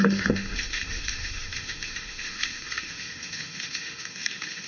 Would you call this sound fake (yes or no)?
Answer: yes